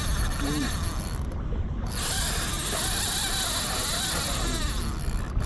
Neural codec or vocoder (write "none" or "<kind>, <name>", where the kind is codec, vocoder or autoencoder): none